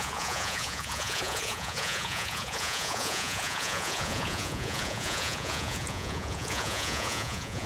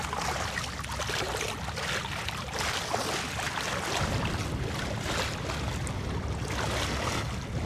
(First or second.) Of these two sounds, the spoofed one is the first